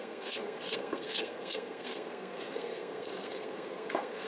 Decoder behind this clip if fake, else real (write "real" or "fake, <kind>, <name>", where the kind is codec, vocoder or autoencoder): fake, codec, SNAC